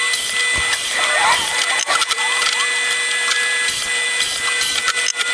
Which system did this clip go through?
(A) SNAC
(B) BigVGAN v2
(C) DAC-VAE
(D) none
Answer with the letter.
D